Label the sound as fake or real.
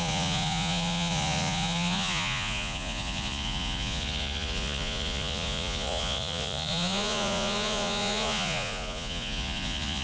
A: fake